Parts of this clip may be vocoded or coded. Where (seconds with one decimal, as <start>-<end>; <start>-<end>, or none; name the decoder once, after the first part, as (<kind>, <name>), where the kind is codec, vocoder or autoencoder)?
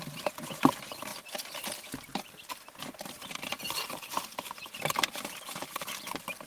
0.0-1.1 (vocoder, BigVGAN v2); 2.8-6.5